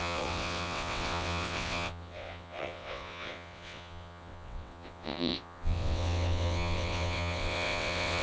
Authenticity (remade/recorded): remade